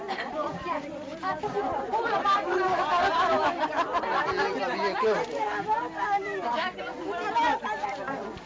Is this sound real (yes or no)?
yes